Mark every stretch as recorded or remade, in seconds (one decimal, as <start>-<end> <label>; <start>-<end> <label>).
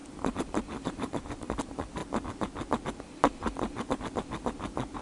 0.0-2.0 remade; 2.0-5.0 recorded